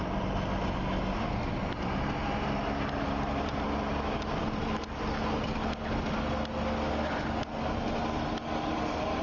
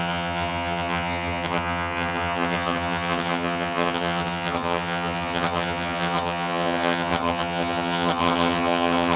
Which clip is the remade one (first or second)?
second